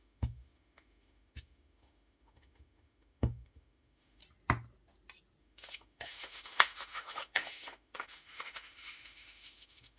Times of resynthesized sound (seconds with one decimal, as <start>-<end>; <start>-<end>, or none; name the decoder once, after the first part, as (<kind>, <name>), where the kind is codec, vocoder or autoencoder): 0.0-4.2 (autoencoder, DAC-VAE); 5.4-10.0